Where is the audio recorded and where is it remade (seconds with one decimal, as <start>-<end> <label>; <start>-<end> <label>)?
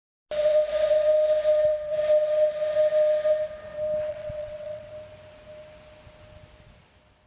0.0-4.1 recorded; 4.1-4.9 remade; 4.9-7.3 recorded